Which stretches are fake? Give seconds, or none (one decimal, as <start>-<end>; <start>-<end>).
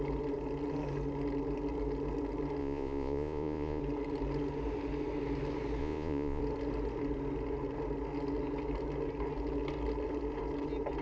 2.6-3.8; 5.8-6.4